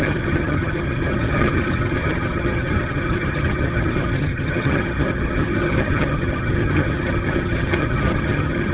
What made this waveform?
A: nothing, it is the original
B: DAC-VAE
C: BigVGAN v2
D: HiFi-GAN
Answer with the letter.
D